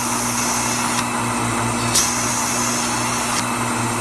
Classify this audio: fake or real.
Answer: real